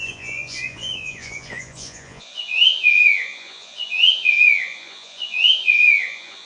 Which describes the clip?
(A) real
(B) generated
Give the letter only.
B